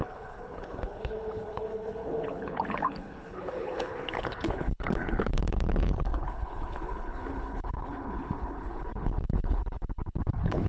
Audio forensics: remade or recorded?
remade